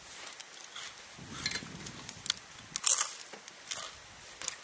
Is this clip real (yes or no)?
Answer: yes